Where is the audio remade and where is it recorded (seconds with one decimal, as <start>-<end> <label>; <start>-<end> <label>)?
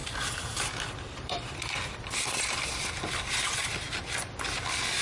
0.0-2.9 remade; 2.9-5.0 recorded